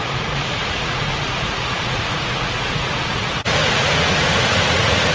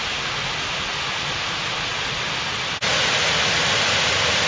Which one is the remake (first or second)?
first